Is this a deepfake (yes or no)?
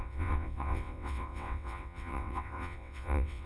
yes